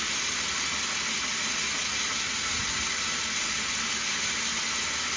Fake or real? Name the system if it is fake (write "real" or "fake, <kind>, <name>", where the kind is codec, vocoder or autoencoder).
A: real